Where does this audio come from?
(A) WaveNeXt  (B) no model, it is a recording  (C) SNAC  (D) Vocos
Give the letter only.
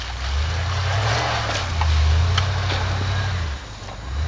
B